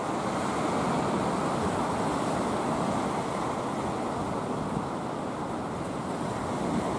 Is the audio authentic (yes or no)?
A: yes